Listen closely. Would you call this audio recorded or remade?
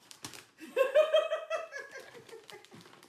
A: remade